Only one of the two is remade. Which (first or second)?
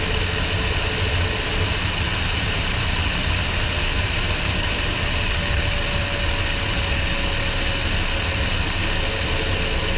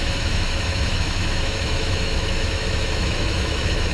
second